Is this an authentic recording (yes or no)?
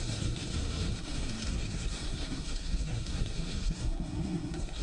no